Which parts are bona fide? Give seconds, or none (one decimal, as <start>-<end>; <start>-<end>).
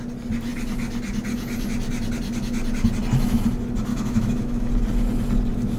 0.0-3.9; 4.7-5.8